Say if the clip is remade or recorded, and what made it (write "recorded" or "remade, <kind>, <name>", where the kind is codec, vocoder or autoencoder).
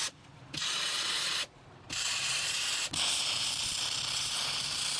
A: remade, vocoder, BigVGAN v2